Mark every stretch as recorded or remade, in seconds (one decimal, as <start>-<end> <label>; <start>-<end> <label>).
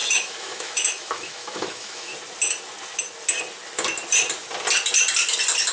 0.0-2.1 remade; 2.1-5.7 recorded